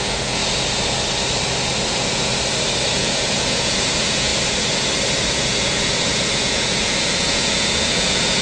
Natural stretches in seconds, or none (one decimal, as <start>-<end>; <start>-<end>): 0.4-1.9; 2.3-2.9; 4.3-5.2